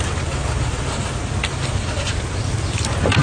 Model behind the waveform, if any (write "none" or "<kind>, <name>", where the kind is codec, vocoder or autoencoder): none